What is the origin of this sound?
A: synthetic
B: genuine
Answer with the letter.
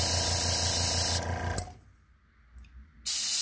B